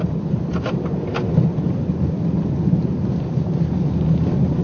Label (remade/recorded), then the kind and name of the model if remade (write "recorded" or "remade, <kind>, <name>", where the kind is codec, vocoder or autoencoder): recorded